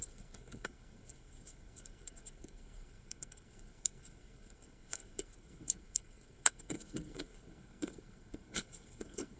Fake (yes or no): yes